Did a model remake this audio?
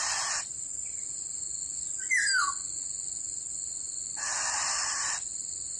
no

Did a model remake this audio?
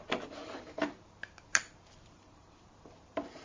yes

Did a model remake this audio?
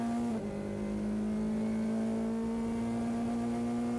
no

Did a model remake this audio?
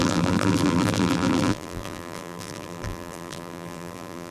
yes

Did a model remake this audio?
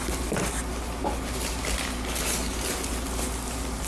no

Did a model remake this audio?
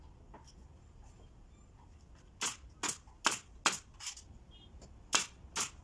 no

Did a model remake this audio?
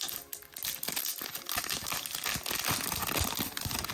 no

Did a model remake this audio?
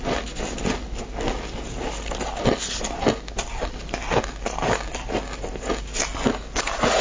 no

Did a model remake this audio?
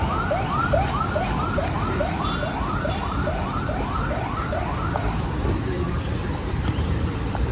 yes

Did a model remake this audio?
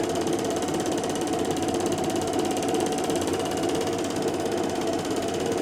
yes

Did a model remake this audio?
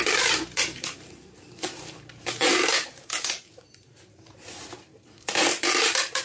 yes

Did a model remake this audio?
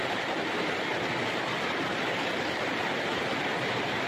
no